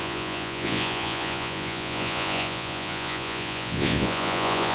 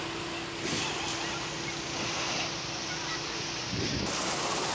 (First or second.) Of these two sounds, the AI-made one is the first